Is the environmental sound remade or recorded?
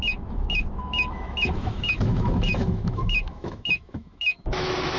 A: remade